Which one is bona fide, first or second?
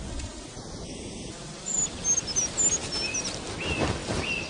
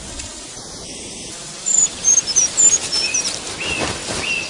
first